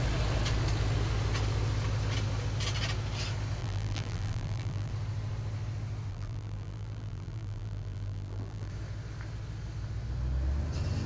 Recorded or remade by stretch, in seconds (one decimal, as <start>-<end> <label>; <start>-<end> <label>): 0.0-3.6 recorded; 3.6-4.9 remade; 4.9-6.1 recorded; 6.1-8.7 remade; 8.7-11.1 recorded